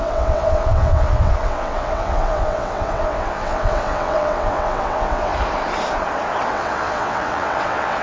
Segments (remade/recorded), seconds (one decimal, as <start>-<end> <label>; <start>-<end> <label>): 0.0-5.3 remade; 5.3-6.5 recorded; 6.5-8.0 remade